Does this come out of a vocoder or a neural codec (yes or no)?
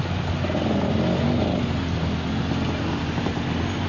no